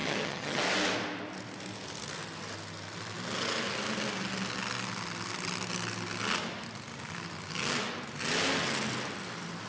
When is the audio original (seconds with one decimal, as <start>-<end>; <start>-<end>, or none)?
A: 0.6-9.7